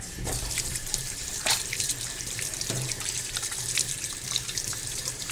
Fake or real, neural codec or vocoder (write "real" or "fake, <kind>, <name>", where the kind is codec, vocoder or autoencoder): fake, vocoder, BigVGAN v2